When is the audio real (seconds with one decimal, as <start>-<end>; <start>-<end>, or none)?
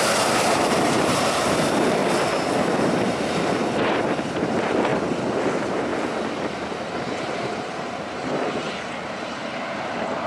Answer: 2.0-2.9; 4.9-5.5; 5.9-7.2